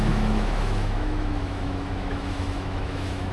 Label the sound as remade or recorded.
remade